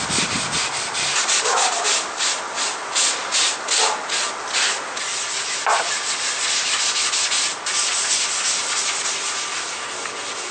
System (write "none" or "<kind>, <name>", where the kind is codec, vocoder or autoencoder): none